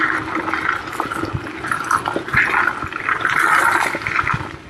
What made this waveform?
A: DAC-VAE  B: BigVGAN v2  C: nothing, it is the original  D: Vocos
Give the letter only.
C